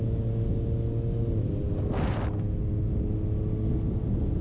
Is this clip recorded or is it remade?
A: recorded